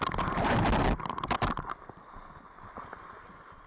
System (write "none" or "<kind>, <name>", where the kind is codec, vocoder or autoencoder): none